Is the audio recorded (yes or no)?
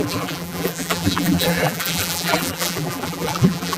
no